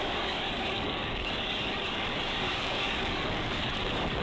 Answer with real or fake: fake